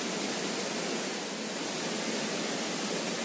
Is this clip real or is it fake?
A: real